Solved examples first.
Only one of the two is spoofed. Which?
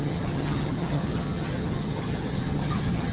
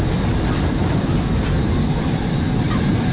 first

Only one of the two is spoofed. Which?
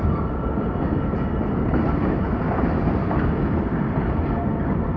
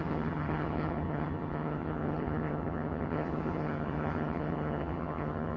second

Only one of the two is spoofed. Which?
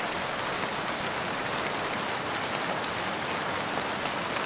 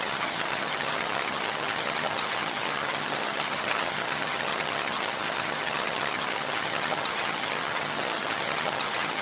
second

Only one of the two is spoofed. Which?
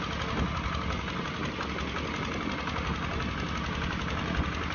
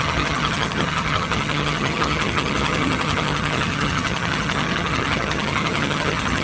second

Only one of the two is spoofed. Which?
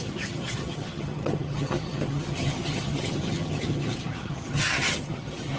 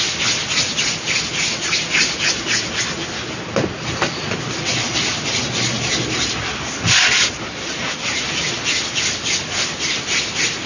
first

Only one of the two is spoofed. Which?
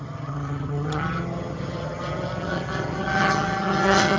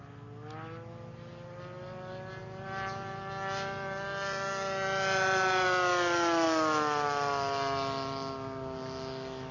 first